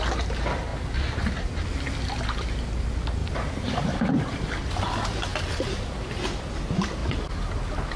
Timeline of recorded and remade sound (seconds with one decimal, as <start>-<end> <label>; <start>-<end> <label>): 0.0-3.2 recorded; 3.2-4.5 remade; 4.5-8.0 recorded